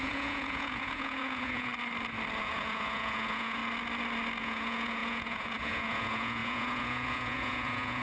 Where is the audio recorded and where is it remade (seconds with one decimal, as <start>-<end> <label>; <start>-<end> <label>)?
0.0-1.7 remade; 1.7-2.4 recorded; 2.4-3.6 remade; 3.6-4.4 recorded; 4.4-8.0 remade